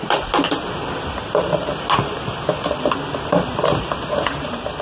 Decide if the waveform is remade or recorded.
recorded